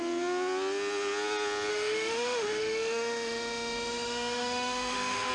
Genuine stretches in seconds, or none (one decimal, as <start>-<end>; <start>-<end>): 0.0-1.7